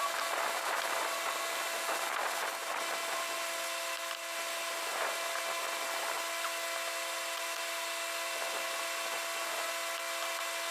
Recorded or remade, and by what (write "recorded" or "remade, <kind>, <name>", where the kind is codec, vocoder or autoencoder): recorded